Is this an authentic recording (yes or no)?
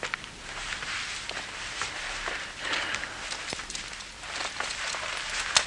yes